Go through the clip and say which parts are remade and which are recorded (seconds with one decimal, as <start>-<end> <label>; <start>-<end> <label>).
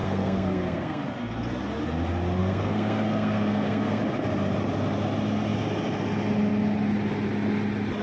0.0-1.0 remade; 1.0-2.4 recorded; 2.4-4.0 remade; 4.0-8.0 recorded